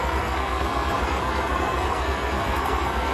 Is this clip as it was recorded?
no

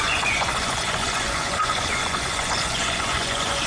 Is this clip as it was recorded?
no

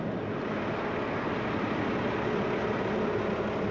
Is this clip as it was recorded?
yes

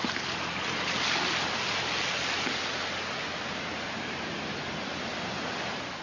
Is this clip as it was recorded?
yes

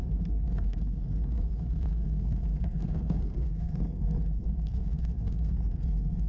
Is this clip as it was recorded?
no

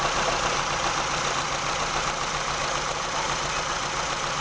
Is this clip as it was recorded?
yes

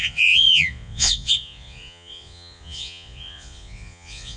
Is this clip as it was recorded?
no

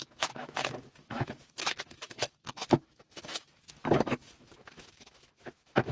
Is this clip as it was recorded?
no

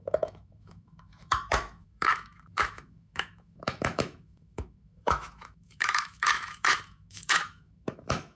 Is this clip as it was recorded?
no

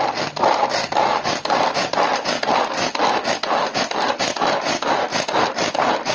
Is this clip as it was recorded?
yes